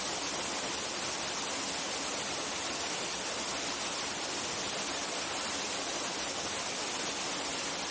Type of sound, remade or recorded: recorded